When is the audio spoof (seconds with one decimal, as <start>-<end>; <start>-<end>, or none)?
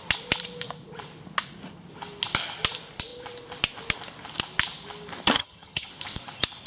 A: 5.4-5.9